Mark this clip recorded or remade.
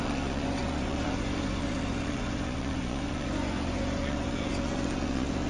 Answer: remade